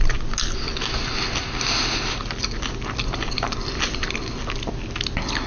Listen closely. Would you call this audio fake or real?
real